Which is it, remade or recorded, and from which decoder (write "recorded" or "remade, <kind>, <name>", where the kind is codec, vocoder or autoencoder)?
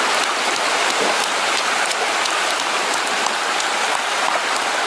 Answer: recorded